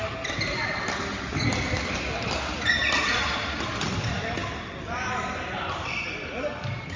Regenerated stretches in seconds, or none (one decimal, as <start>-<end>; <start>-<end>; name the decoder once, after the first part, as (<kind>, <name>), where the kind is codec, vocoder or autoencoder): none